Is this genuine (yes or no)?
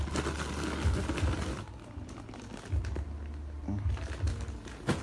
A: yes